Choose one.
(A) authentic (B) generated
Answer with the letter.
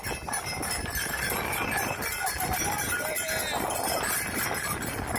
A